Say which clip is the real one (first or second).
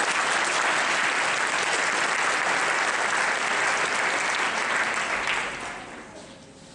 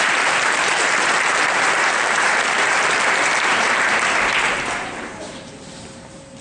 first